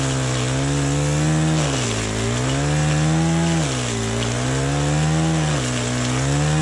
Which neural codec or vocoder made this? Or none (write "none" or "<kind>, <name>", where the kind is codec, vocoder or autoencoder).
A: none